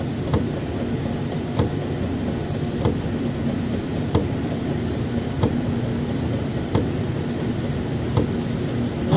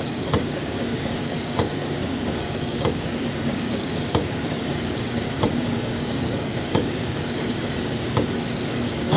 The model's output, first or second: second